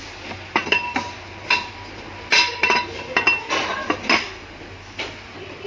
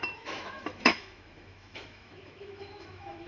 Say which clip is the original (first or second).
first